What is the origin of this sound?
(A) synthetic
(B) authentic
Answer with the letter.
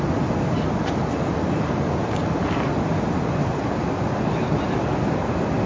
B